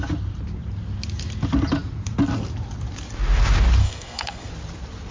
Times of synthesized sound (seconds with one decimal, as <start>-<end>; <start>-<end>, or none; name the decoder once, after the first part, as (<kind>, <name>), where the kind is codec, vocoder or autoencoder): 3.8-4.5 (codec, SNAC)